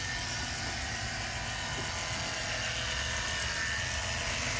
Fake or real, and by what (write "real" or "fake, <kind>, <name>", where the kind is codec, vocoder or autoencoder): real